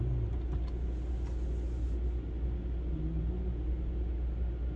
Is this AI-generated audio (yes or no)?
no